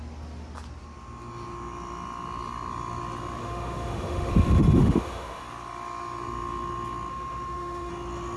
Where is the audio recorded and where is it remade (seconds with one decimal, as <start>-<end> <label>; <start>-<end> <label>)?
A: 0.0-3.4 recorded; 3.4-4.3 remade; 4.3-4.8 recorded; 4.8-5.4 remade; 5.4-7.1 recorded; 7.1-7.9 remade; 7.9-8.4 recorded